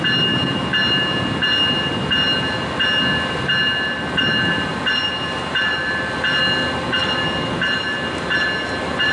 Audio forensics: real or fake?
real